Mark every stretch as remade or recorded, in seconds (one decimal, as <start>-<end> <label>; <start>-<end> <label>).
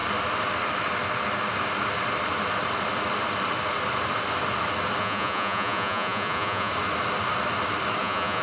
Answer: 0.0-5.0 recorded; 5.0-6.7 remade; 6.7-8.0 recorded; 8.0-8.4 remade